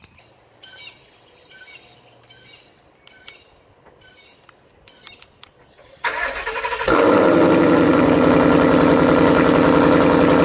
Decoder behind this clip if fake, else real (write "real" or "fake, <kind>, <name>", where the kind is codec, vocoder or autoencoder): real